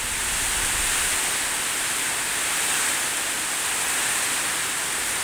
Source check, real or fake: real